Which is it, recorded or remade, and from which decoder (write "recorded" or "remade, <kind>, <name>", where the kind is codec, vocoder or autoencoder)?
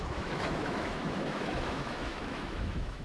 remade, autoencoder, DAC-VAE